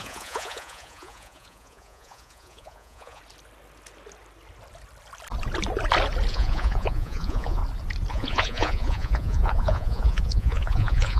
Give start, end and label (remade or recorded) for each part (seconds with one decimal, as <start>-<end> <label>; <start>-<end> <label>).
0.0-3.2 remade; 3.2-6.3 recorded; 6.3-7.6 remade; 7.6-8.1 recorded; 8.1-11.2 remade